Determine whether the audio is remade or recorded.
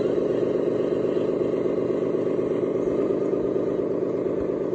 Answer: recorded